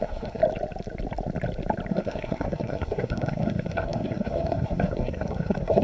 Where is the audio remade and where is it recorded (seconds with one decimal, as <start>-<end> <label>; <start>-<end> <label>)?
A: 0.0-0.4 remade; 0.4-1.9 recorded; 1.9-5.8 remade